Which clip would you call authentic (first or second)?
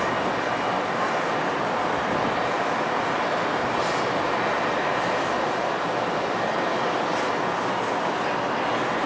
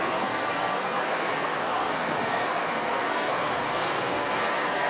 first